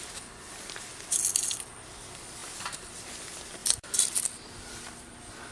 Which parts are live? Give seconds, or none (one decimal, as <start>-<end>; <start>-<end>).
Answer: 0.0-2.4; 2.9-3.6; 4.2-5.5